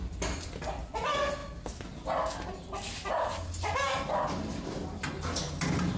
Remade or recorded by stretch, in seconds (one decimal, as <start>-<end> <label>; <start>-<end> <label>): 0.0-6.0 recorded